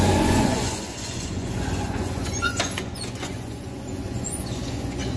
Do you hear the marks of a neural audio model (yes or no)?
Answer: yes